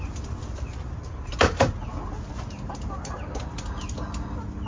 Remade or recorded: recorded